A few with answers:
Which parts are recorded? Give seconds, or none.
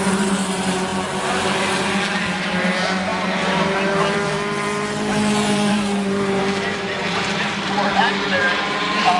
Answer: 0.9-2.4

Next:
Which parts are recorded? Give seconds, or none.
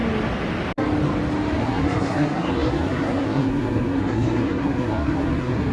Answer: 0.0-1.6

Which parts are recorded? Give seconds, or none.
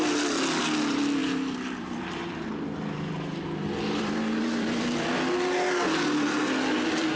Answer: 0.0-1.2; 5.1-7.2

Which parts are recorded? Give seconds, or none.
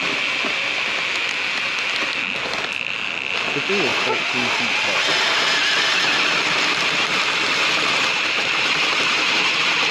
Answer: 0.0-9.9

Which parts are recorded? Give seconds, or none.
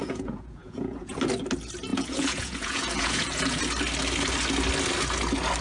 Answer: 1.1-1.9; 3.6-5.6